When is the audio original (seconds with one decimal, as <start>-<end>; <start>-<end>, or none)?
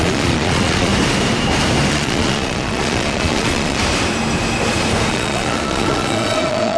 0.9-1.9; 3.8-5.1